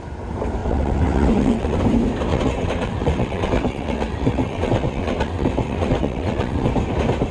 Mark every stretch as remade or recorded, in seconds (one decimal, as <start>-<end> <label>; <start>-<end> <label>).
0.0-0.6 recorded; 0.6-1.8 remade; 1.8-2.3 recorded; 2.3-6.7 remade; 6.7-7.3 recorded